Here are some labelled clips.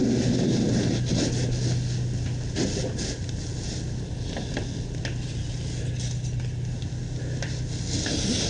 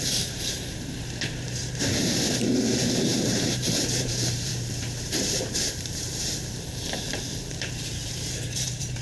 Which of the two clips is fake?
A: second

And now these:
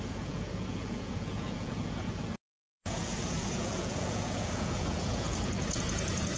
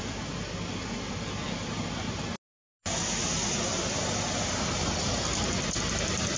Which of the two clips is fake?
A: first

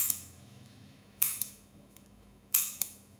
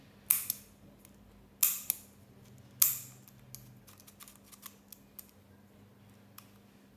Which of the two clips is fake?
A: first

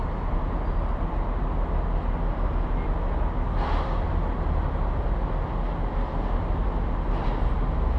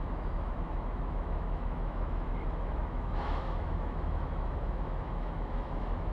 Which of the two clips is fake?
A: second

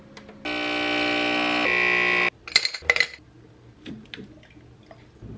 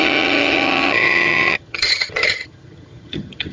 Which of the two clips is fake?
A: second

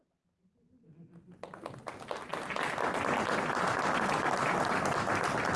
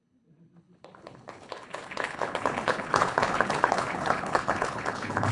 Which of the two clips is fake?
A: second